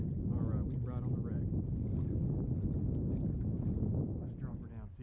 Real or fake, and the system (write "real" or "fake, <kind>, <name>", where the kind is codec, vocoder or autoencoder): real